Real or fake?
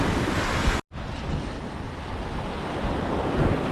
real